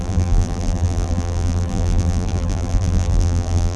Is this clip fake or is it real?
fake